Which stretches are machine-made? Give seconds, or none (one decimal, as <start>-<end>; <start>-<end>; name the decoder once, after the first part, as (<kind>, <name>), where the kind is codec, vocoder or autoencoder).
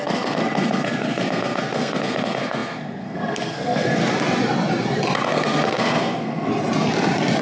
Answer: 0.0-4.0 (codec, SNAC); 5.3-6.5